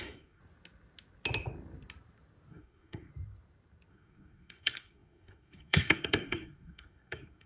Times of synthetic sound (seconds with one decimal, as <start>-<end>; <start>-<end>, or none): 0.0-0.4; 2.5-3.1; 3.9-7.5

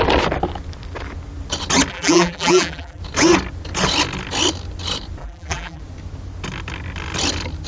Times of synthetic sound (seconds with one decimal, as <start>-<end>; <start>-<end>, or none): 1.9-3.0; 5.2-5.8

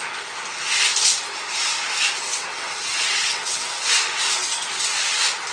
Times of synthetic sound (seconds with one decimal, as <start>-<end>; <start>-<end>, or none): 2.3-3.8

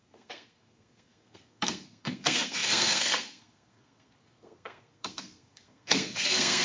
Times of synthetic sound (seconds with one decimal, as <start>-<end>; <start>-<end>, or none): 0.0-6.6

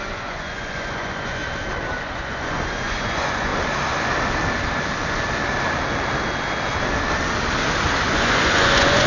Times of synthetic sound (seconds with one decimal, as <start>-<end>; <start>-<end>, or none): 0.0-1.4; 2.0-3.5; 8.0-9.1